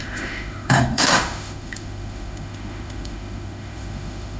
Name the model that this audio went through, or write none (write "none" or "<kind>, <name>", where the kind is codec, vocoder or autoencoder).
autoencoder, DAC-VAE